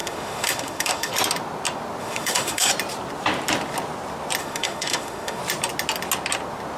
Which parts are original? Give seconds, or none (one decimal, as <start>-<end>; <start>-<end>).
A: 1.1-2.0; 2.7-4.4; 5.4-6.8